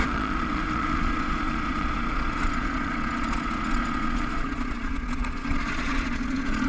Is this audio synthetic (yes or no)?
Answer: yes